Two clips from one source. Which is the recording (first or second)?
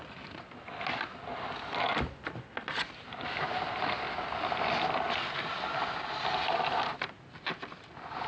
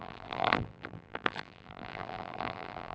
first